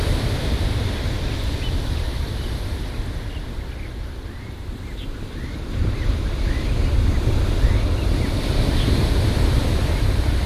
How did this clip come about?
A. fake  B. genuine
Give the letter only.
B